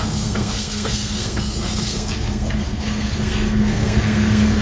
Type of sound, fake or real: fake